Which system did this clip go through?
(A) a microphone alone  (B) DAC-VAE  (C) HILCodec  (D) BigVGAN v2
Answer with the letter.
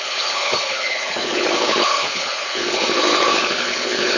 C